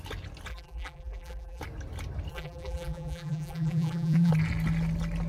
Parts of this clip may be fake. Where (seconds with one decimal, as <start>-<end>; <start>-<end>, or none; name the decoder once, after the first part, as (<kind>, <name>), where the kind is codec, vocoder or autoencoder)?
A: 0.5-1.6 (vocoder, BigVGAN v2); 2.3-4.3